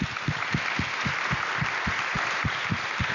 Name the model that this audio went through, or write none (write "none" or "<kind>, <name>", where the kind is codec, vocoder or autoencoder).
none